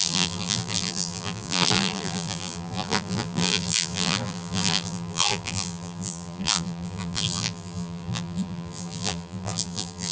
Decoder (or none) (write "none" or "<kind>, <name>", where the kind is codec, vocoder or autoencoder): vocoder, BigVGAN v2